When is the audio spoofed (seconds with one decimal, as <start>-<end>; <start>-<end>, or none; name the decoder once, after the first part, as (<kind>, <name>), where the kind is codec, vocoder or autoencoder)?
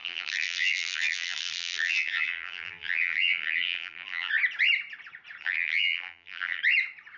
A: 0.0-4.3 (vocoder, BigVGAN v2); 5.4-6.6